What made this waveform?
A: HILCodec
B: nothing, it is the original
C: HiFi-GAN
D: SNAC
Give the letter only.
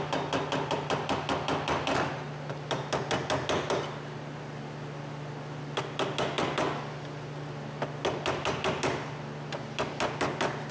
B